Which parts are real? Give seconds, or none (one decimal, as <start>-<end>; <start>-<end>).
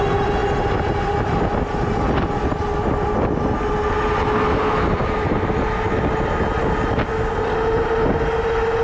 0.0-8.8